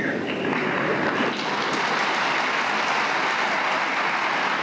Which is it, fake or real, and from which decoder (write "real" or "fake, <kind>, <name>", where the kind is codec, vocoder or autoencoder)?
real